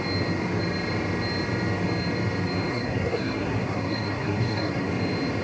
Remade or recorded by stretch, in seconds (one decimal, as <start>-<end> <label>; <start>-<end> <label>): 0.0-2.7 recorded; 2.7-4.9 remade; 4.9-5.4 recorded